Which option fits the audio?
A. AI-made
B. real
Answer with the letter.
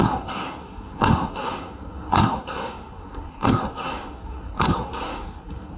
A